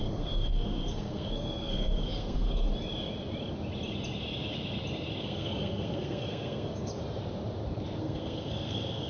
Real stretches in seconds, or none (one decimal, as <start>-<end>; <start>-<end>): 2.7-5.2; 6.9-8.0